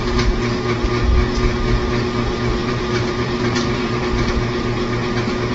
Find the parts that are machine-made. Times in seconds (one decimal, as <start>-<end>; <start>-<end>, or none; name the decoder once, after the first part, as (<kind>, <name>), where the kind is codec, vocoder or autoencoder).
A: 2.6-4.0 (vocoder, BigVGAN v2)